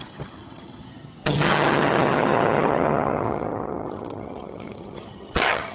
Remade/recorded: remade